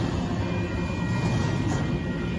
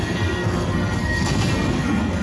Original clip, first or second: first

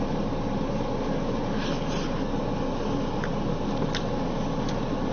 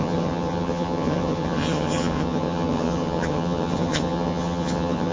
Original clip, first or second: first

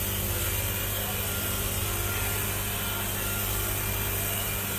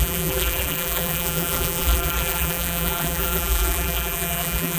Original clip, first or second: first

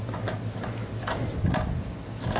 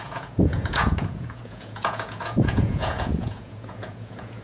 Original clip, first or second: first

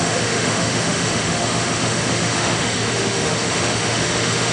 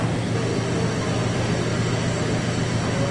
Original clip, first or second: second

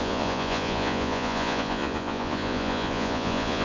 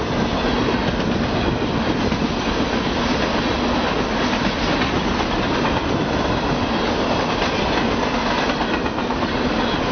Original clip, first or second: second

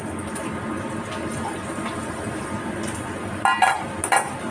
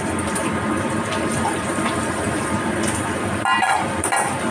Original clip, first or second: first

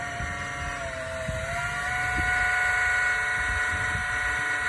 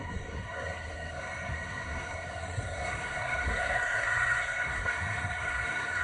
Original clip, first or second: first